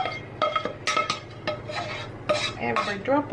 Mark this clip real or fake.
real